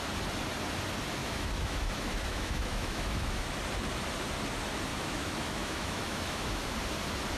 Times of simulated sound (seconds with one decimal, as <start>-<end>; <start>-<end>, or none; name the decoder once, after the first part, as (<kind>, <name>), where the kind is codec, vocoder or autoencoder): 1.2-3.5 (autoencoder, DAC-VAE); 4.9-6.7